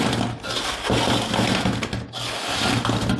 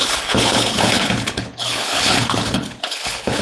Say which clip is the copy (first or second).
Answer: second